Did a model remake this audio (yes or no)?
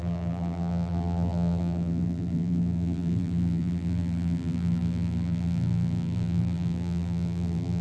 yes